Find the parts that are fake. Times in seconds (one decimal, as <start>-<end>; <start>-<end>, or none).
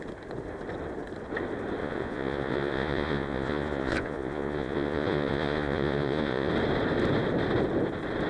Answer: 1.8-6.5